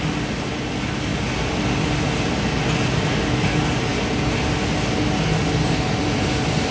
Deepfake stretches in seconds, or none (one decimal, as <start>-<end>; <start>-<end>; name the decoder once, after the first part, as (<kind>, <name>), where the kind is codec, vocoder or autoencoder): none